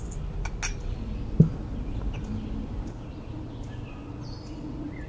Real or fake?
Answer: real